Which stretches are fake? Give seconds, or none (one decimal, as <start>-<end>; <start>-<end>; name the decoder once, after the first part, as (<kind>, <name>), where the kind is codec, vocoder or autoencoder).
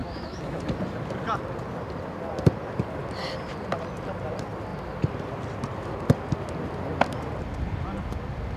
0.0-0.6 (autoencoder, DAC-VAE)